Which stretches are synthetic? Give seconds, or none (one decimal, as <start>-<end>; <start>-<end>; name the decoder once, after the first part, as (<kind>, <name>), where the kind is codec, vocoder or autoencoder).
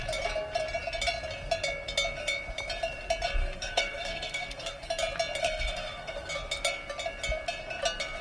3.4-4.9 (codec, SNAC); 5.4-6.3